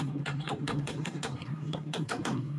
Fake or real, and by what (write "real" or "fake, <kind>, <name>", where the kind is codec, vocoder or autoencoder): fake, codec, SNAC